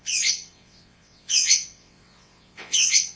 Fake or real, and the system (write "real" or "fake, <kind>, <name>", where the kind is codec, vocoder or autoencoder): fake, vocoder, WaveNeXt